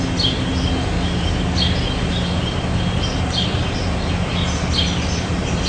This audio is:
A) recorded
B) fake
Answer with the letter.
A